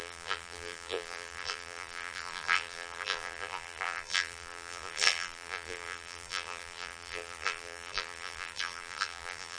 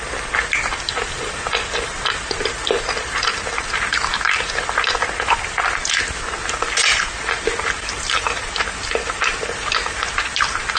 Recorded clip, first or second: second